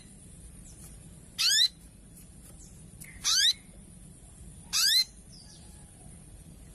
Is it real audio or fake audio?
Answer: fake